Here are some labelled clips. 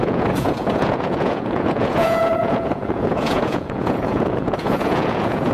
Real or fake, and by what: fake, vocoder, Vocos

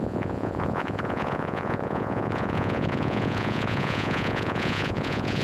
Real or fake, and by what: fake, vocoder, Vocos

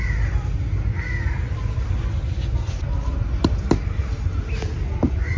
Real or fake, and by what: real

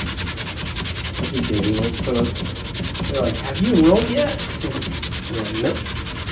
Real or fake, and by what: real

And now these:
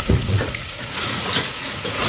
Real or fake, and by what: fake, vocoder, Vocos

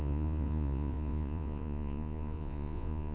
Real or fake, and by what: fake, vocoder, Vocos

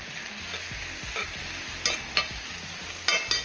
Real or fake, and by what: real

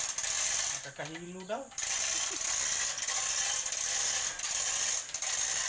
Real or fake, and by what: real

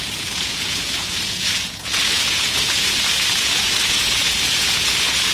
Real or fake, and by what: fake, vocoder, Vocos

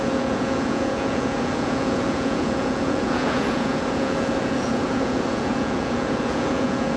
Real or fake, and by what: fake, vocoder, Vocos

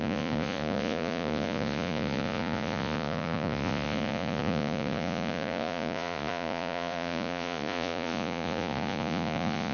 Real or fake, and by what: fake, vocoder, Vocos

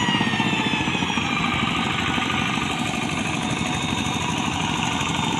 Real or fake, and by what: real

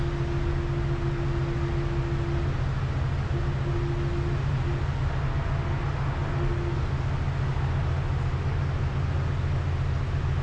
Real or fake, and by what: real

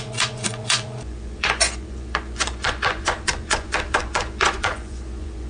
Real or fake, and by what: fake, vocoder, Vocos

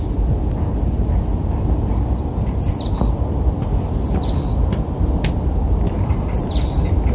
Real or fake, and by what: real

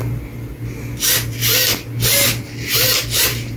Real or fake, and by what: real